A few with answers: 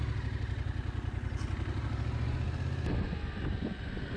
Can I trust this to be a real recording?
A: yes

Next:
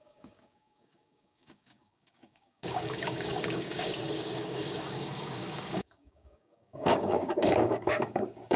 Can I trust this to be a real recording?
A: no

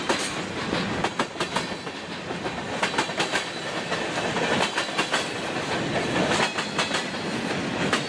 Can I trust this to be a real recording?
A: yes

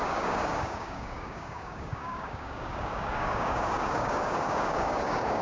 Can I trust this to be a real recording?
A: no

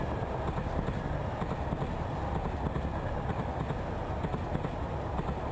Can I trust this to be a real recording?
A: yes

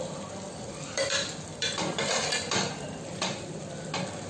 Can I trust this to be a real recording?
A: no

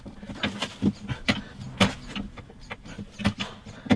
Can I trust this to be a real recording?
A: yes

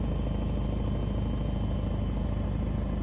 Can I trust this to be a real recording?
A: yes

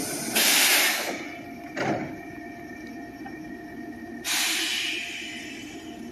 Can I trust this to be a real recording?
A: yes